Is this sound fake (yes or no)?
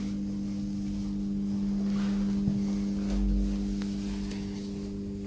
no